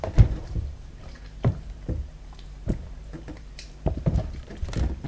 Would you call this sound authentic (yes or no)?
no